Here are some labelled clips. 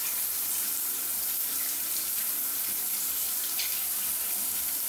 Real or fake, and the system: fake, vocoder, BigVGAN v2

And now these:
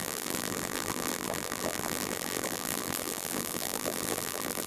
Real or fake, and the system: fake, vocoder, BigVGAN v2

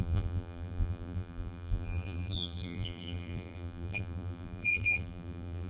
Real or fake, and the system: fake, vocoder, BigVGAN v2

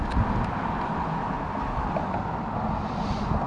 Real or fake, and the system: real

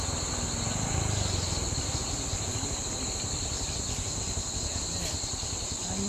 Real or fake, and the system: real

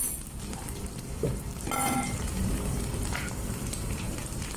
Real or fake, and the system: fake, vocoder, BigVGAN v2